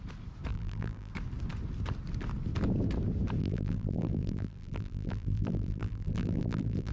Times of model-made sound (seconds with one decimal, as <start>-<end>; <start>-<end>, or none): 0.5-1.1; 3.4-6.9